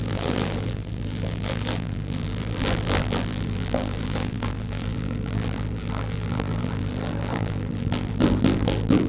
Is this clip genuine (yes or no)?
no